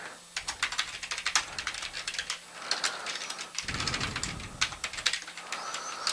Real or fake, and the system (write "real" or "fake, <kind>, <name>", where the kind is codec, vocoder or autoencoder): real